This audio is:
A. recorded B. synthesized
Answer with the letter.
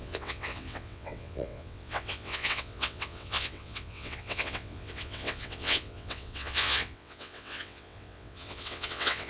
B